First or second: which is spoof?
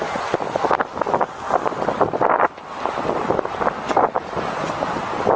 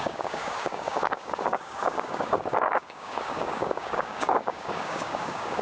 second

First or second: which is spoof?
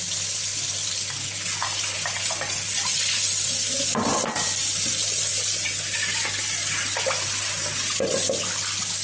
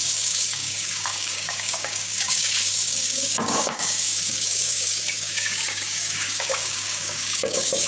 second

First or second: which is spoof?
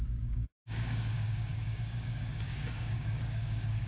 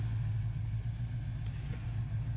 first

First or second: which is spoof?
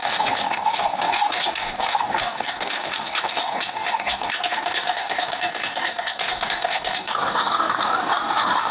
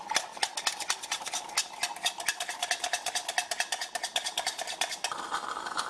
first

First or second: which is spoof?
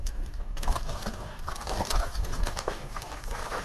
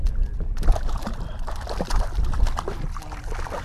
first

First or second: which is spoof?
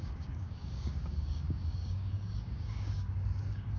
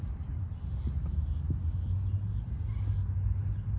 first